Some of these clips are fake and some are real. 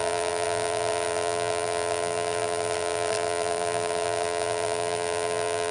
fake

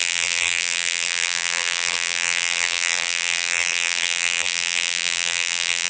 fake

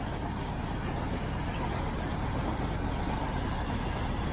real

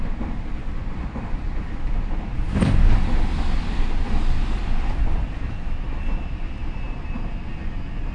real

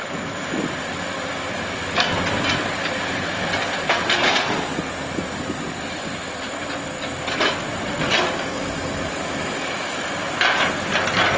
fake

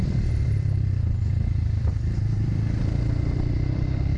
fake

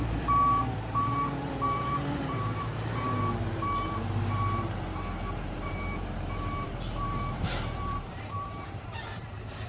fake